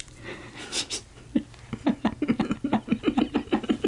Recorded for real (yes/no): yes